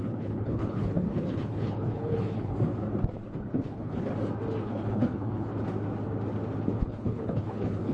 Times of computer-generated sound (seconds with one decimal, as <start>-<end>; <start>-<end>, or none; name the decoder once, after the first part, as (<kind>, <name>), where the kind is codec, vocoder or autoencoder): 0.0-2.5 (codec, HILCodec); 3.5-4.1; 4.6-5.5; 6.8-7.9